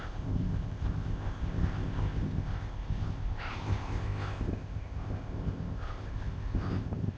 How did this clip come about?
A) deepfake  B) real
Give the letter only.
A